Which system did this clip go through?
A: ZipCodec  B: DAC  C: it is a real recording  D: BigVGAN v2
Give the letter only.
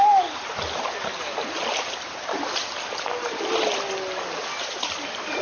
C